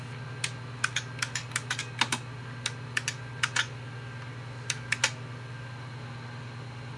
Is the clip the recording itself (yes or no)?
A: yes